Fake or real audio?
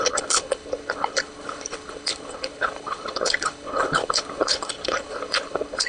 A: fake